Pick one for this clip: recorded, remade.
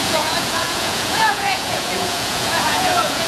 remade